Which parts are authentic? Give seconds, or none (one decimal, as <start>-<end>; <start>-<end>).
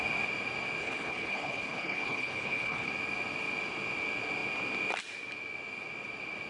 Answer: 0.0-0.8; 2.9-6.5